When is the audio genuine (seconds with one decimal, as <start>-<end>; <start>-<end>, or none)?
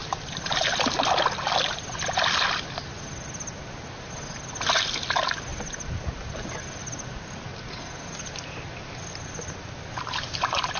0.0-10.8